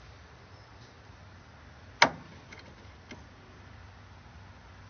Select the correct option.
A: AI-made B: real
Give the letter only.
B